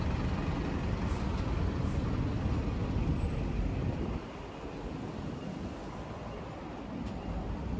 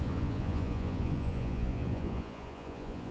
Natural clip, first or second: first